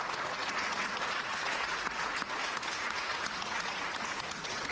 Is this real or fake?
fake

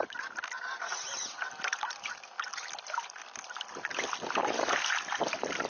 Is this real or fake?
real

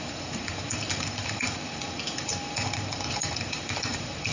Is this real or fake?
fake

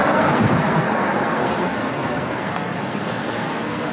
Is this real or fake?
fake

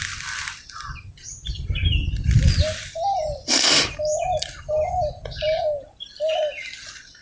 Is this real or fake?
real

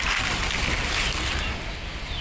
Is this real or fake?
real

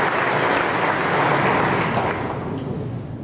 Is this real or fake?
real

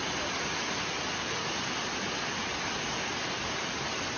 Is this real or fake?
real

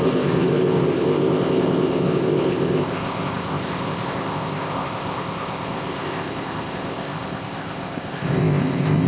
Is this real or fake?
fake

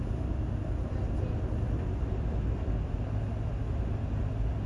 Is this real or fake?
real